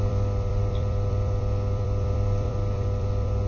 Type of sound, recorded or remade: remade